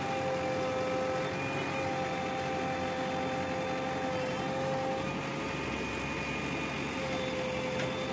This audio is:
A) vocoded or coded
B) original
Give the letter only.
B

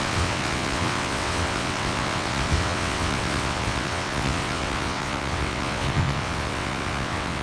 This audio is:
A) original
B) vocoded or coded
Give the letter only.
B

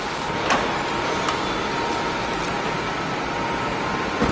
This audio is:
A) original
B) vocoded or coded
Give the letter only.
A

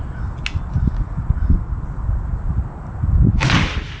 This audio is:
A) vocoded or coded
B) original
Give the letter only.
B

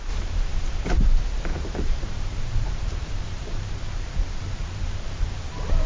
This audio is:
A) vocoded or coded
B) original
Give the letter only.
A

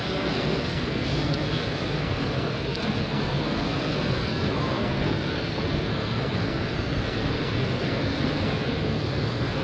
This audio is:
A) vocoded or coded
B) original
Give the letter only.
A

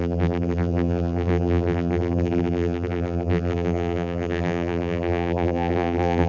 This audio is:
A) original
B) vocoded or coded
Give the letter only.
B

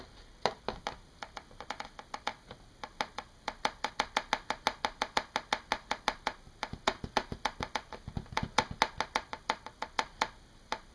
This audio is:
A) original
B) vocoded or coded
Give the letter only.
A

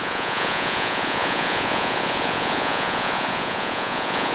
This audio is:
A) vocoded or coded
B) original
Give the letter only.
A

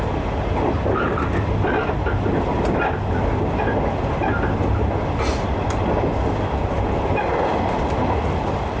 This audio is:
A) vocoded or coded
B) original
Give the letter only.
B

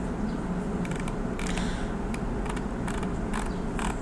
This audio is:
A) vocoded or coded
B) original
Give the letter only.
B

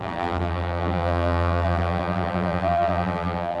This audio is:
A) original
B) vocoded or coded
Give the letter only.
B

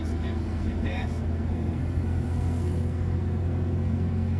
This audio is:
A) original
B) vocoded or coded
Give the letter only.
B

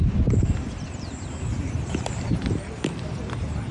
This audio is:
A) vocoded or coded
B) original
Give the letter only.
A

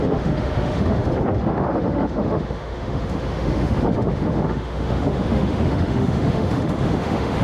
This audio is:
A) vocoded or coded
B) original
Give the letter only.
A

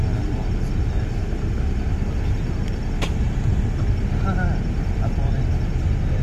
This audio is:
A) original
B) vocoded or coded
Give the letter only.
A